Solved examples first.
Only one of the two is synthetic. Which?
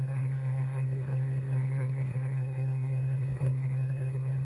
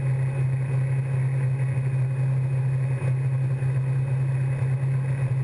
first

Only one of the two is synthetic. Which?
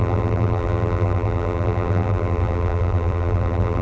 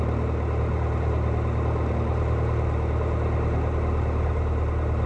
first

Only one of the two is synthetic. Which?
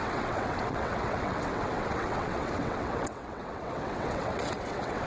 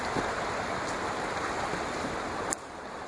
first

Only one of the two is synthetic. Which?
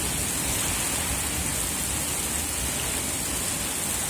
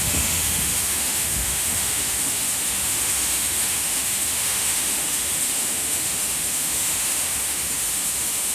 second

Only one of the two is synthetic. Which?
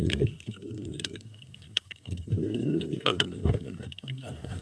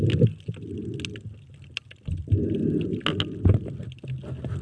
first